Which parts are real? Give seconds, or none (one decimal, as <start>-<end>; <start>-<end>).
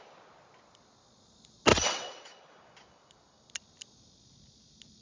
0.0-1.7; 2.5-5.0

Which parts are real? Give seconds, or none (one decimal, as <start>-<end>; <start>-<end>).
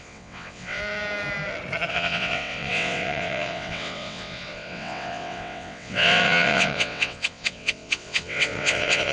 0.8-1.9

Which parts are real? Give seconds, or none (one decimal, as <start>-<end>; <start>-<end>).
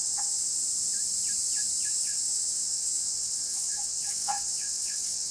0.6-2.0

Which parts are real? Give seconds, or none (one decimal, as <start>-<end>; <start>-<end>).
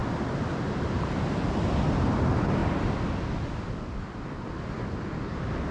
0.0-5.7